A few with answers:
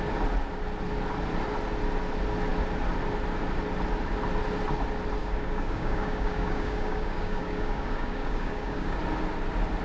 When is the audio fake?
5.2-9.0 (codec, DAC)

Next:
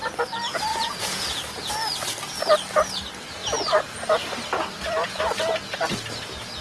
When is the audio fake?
0.7-1.7 (vocoder, Vocos)